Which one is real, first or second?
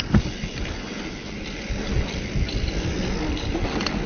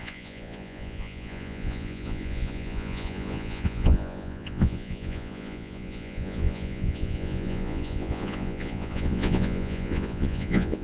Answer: first